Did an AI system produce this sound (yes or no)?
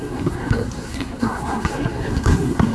yes